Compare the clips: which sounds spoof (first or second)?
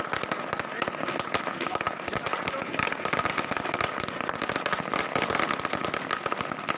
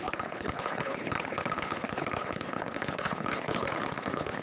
second